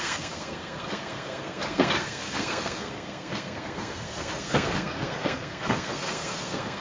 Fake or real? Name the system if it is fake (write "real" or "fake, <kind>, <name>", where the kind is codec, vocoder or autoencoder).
fake, codec, SNAC